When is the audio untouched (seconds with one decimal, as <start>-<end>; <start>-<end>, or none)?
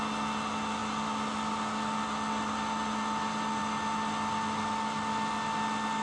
0.0-6.0